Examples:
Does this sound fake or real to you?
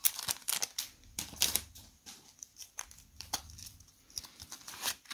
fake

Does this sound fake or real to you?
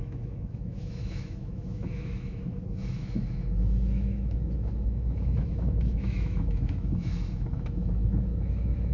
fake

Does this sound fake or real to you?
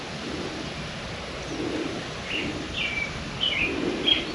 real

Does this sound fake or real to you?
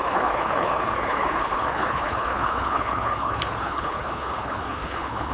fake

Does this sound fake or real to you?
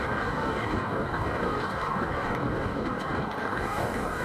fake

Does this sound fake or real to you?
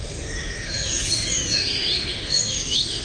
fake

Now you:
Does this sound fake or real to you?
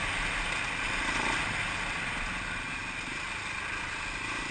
real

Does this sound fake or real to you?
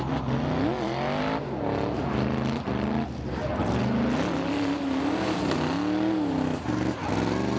real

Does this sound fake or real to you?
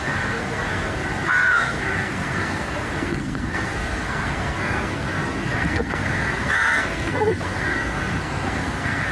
fake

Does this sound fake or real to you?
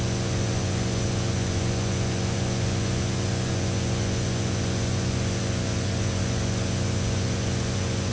fake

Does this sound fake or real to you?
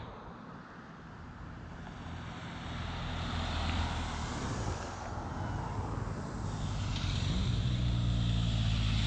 real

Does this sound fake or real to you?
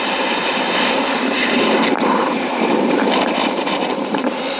fake